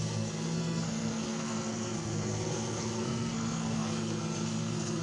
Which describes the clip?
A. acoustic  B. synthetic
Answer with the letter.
B